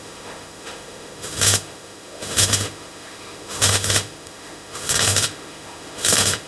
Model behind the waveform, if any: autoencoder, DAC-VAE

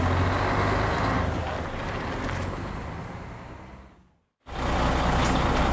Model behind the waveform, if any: none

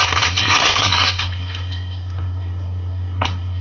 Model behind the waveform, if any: codec, SNAC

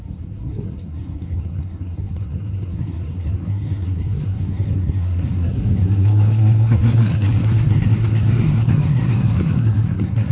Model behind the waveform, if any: codec, SNAC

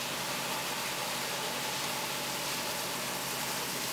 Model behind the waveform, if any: none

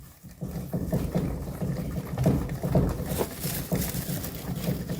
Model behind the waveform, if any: none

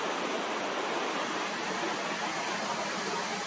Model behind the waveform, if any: none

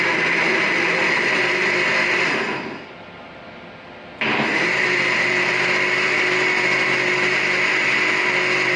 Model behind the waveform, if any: none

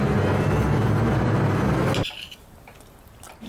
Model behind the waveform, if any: none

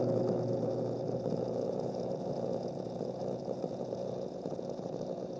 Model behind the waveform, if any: vocoder, Vocos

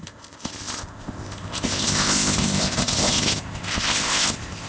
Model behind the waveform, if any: codec, ZipCodec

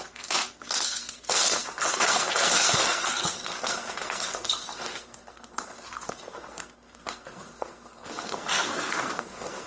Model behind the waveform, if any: codec, SNAC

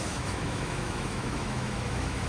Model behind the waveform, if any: autoencoder, DAC-VAE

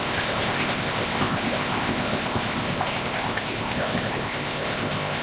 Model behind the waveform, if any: codec, ZipCodec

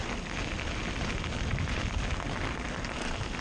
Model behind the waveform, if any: none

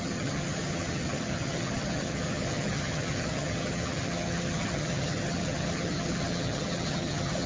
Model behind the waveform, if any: vocoder, HiFi-GAN